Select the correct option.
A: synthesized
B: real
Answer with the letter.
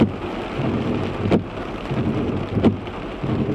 B